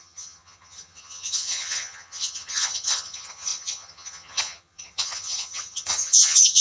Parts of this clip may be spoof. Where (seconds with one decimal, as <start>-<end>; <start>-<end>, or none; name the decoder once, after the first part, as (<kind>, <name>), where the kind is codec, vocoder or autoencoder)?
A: 0.0-6.6 (vocoder, HiFi-GAN)